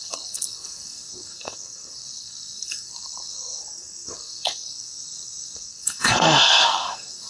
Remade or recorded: remade